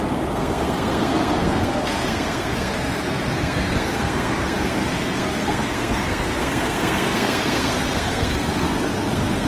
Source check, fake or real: fake